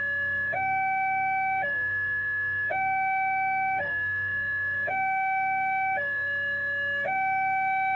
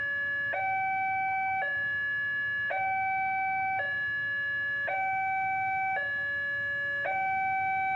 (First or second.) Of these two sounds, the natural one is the second